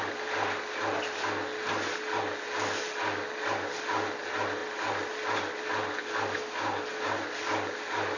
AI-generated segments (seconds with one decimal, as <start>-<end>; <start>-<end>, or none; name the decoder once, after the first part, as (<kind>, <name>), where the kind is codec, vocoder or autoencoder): none